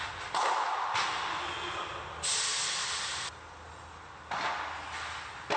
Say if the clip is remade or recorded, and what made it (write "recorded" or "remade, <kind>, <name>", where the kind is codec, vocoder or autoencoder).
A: recorded